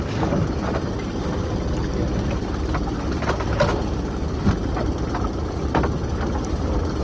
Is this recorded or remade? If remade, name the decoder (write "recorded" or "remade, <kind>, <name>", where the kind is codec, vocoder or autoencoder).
recorded